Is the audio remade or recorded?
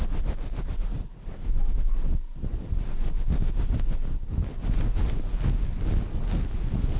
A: recorded